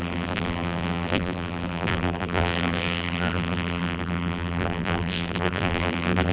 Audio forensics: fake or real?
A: fake